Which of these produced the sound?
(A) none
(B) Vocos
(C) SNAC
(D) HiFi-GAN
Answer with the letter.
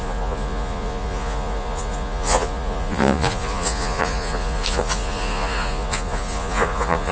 B